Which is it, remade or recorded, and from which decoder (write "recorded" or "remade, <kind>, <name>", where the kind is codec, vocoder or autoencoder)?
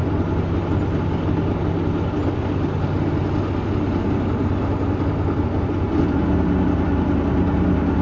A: recorded